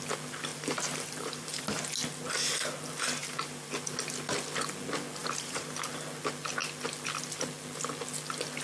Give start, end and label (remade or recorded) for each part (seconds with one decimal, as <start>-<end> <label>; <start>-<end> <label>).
0.0-0.5 recorded; 0.5-1.8 remade; 1.8-3.2 recorded; 3.2-3.8 remade; 3.8-5.2 recorded; 5.2-5.7 remade; 5.7-8.6 recorded